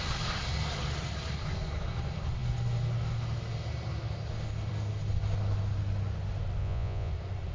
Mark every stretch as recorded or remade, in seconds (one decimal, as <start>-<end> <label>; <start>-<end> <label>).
0.0-6.6 recorded; 6.6-7.1 remade; 7.1-7.5 recorded